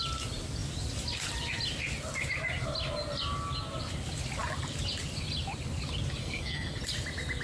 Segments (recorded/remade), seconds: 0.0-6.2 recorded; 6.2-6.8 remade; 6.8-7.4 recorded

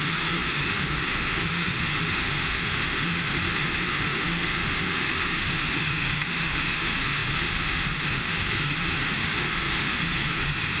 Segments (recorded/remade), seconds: 0.0-10.8 remade